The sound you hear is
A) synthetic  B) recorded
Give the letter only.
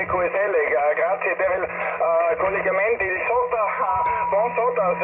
B